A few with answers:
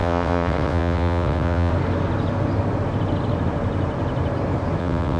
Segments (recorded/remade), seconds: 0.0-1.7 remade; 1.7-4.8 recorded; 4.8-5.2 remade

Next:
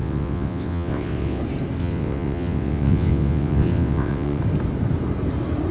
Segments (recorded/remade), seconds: 0.0-1.4 remade; 1.4-1.8 recorded; 1.8-4.4 remade; 4.4-5.7 recorded